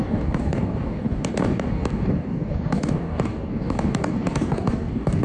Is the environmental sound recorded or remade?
remade